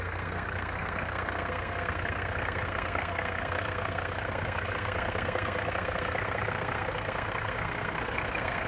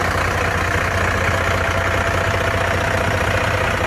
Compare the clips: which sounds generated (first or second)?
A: first